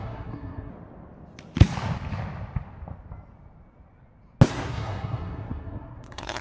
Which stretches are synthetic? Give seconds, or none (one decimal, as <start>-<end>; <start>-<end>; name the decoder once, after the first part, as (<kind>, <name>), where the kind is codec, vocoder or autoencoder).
0.0-0.7 (codec, SNAC); 4.5-6.4